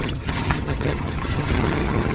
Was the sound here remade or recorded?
remade